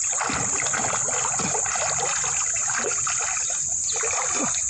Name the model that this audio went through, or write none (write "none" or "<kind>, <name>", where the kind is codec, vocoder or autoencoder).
none